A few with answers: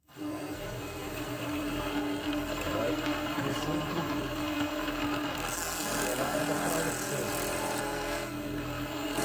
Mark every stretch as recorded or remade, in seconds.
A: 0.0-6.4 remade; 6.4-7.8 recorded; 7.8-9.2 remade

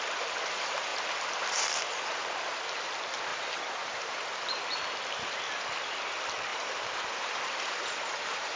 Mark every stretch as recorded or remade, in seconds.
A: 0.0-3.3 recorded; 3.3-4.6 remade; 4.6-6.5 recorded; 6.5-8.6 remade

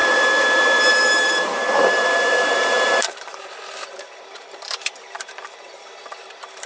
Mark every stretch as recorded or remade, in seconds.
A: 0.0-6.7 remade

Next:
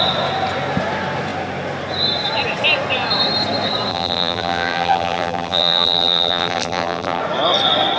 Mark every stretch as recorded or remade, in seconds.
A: 0.0-3.9 recorded; 3.9-7.2 remade; 7.2-8.0 recorded